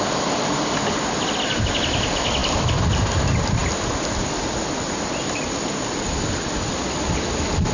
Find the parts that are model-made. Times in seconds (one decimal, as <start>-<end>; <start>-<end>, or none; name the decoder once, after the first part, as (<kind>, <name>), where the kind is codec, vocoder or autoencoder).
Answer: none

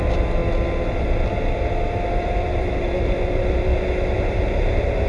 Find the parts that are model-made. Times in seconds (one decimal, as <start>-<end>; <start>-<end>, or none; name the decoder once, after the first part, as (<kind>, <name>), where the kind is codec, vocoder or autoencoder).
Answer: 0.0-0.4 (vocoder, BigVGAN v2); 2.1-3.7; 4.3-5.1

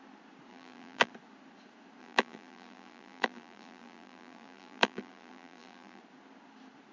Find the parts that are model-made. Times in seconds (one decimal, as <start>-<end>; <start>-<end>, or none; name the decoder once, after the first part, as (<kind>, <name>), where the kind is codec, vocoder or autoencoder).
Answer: 0.5-1.1 (vocoder, BigVGAN v2); 2.0-6.0